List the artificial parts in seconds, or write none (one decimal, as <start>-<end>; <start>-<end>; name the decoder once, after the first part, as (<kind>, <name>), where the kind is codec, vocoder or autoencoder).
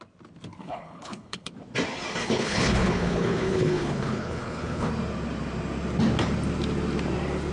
0.6-1.5 (codec, HILCodec); 2.2-4.9